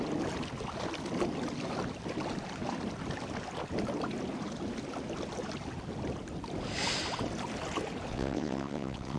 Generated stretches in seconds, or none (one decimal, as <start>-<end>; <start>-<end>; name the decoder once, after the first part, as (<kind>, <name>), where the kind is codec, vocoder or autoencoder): 8.1-9.2 (vocoder, WaveNeXt)